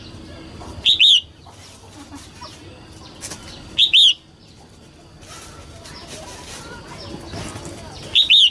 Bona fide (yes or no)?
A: yes